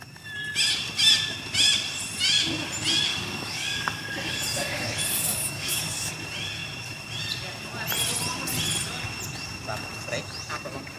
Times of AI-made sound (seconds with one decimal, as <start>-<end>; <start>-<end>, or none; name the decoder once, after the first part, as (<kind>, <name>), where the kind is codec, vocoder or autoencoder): 3.1-6.1 (codec, DAC)